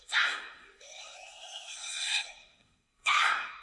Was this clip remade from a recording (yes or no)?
yes